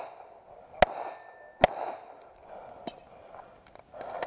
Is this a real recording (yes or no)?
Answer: yes